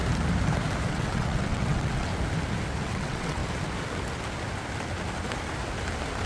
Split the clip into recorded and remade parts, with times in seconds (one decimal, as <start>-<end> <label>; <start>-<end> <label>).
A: 0.0-0.9 recorded; 0.9-2.1 remade; 2.1-2.8 recorded; 2.8-3.4 remade; 3.4-6.3 recorded